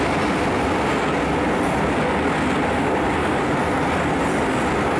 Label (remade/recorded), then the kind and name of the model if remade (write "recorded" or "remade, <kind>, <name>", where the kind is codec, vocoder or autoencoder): recorded